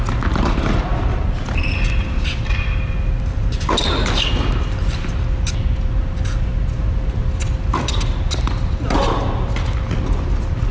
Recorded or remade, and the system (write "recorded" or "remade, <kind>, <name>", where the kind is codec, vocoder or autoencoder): recorded